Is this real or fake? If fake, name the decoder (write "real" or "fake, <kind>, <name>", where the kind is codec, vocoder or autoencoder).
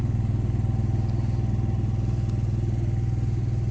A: real